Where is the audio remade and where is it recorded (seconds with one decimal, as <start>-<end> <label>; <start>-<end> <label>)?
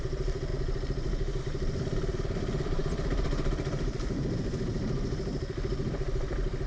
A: 0.0-0.5 remade; 0.5-1.4 recorded; 1.4-6.7 remade